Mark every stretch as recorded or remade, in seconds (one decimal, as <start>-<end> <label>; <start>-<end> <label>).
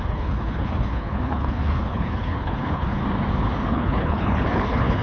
0.0-3.0 remade; 3.0-3.7 recorded; 3.7-5.0 remade